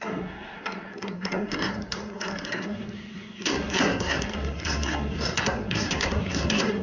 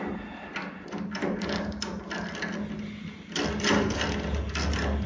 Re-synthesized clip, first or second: first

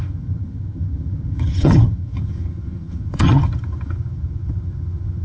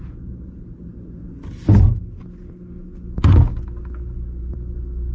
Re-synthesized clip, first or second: first